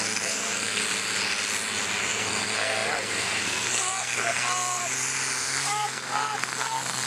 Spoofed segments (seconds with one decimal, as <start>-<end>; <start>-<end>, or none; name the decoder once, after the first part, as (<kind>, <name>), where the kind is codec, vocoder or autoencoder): 0.0-0.8 (codec, SNAC); 2.0-4.8; 5.4-7.1